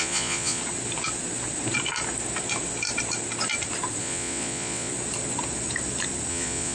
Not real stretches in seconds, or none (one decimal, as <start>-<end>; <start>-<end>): 0.0-0.6; 4.0-4.9; 6.3-6.7